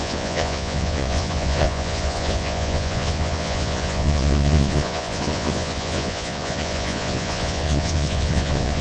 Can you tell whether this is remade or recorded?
remade